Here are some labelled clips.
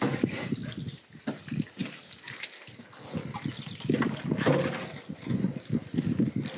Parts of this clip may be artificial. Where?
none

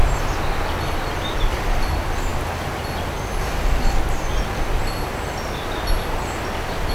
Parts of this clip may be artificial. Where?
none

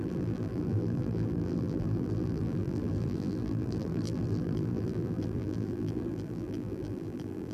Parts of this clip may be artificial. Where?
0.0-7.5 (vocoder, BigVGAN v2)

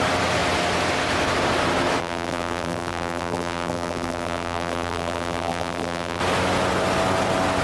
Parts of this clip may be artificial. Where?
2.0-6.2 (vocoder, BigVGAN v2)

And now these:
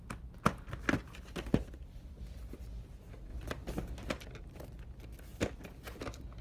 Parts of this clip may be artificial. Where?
none

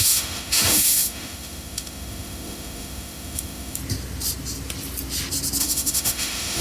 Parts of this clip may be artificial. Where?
0.0-3.8 (autoencoder, DAC-VAE); 5.6-6.6

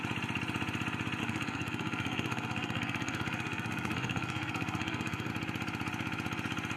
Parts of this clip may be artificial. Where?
1.2-5.3 (codec, SNAC)